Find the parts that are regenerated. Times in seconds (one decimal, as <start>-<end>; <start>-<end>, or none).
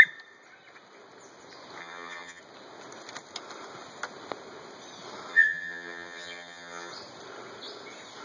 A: 1.8-2.4; 5.3-6.9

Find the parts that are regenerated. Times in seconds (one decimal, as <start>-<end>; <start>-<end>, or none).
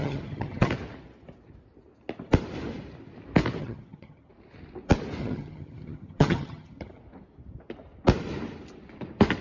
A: 0.0-0.7; 3.6-4.3; 5.2-7.0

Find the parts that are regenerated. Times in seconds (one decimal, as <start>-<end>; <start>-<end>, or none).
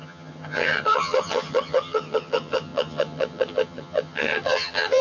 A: 0.0-5.0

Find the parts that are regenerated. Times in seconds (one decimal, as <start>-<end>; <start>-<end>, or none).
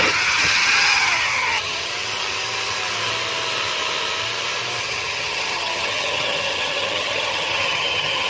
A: 0.0-1.9; 4.8-8.3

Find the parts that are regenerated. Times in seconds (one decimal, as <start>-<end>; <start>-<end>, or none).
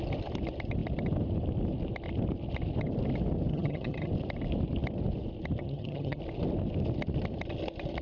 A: 3.5-4.1; 5.6-6.2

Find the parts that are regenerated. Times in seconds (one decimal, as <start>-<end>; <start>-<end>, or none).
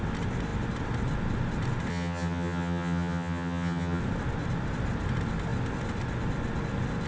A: 1.9-4.0